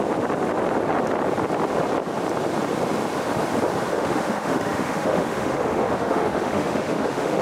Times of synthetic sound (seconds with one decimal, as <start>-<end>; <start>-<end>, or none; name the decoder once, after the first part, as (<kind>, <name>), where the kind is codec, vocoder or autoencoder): 3.9-7.4 (autoencoder, DAC-VAE)